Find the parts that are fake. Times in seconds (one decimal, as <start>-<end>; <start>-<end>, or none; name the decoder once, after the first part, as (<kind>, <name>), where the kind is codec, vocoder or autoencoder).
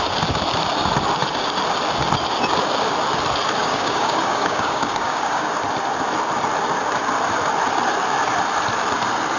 3.6-5.5 (codec, DAC)